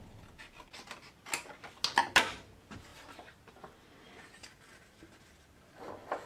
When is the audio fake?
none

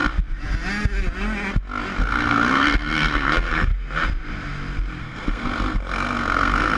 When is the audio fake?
2.0-3.7 (codec, SNAC); 5.0-6.8

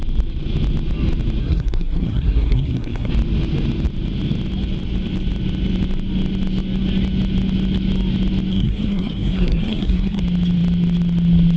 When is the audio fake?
1.4-3.1 (codec, SNAC); 8.5-10.2

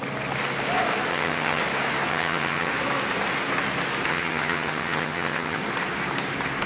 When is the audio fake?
1.1-1.6 (vocoder, HiFi-GAN); 2.1-2.7; 4.1-5.6

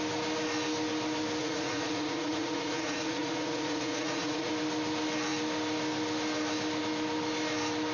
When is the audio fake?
1.4-4.5 (vocoder, Vocos)

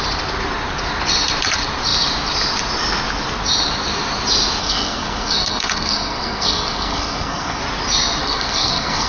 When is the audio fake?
4.6-7.6 (codec, SNAC); 8.2-9.1